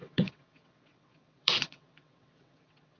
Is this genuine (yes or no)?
no